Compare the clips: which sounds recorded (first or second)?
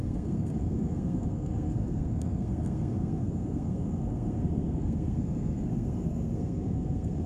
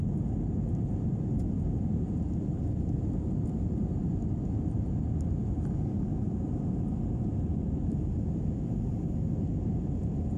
second